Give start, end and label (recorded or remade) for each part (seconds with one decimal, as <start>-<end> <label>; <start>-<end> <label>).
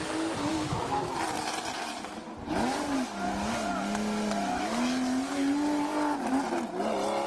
0.0-0.5 recorded; 0.5-1.2 remade; 1.2-7.3 recorded